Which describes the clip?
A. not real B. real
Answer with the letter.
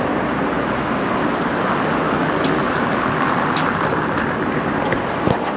B